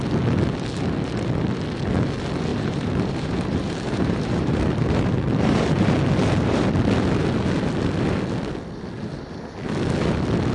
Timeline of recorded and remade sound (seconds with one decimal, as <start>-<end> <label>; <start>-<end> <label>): 0.0-2.5 recorded; 2.5-6.7 remade; 6.7-10.5 recorded